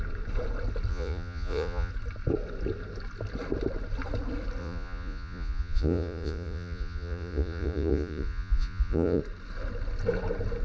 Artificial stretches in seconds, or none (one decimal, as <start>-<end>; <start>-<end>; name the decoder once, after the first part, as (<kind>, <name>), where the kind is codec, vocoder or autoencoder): 0.9-1.9 (vocoder, Vocos); 4.6-9.2